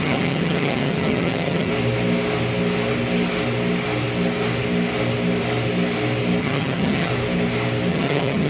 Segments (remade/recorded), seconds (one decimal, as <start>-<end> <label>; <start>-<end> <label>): 0.0-1.7 remade; 1.7-6.4 recorded; 6.4-7.1 remade; 7.1-7.9 recorded; 7.9-8.5 remade